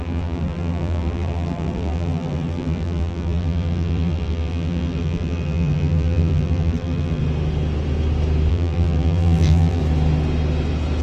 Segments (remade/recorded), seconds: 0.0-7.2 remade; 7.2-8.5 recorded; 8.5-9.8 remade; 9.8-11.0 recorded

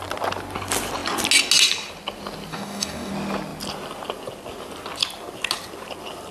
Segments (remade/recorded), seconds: 0.0-2.5 recorded; 2.5-3.1 remade; 3.1-6.3 recorded